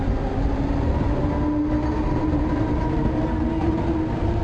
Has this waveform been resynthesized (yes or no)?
no